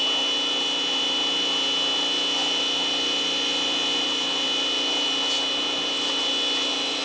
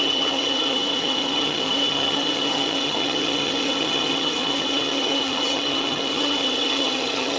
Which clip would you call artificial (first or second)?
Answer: second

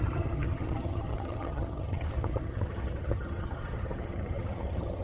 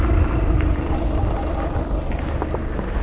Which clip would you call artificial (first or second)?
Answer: first